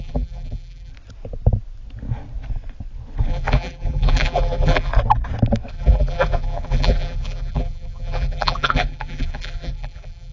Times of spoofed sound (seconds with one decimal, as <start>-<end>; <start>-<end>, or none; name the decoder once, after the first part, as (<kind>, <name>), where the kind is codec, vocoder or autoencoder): 0.0-0.9 (vocoder, BigVGAN v2); 3.3-4.9; 5.7-10.3